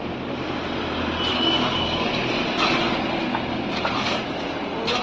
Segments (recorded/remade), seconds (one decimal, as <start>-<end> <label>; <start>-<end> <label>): 0.0-1.3 recorded; 1.3-2.1 remade; 2.1-3.3 recorded; 3.3-3.8 remade; 3.8-5.0 recorded